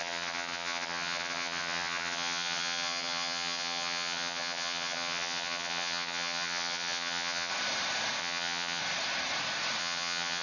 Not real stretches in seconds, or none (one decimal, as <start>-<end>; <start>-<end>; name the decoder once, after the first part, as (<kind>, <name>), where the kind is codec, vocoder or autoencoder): 0.0-7.5 (vocoder, HiFi-GAN); 8.2-8.8; 9.8-10.4